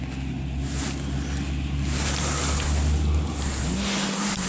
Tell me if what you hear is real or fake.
real